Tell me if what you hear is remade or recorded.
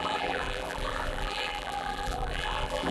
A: remade